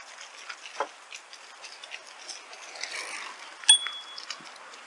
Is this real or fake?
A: real